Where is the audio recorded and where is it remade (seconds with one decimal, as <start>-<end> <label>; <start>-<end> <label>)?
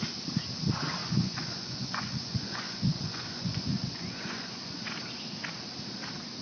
0.0-1.0 recorded; 1.0-4.8 remade; 4.8-6.4 recorded